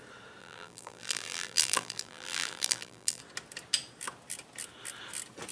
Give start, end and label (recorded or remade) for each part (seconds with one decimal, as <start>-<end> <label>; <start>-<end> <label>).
0.0-0.4 recorded; 0.4-3.2 remade; 3.2-5.5 recorded